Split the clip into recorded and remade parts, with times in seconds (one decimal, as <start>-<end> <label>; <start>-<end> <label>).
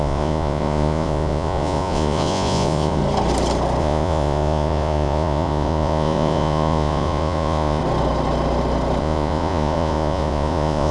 0.0-3.0 remade; 3.0-3.8 recorded; 3.8-7.8 remade; 7.8-9.0 recorded; 9.0-10.9 remade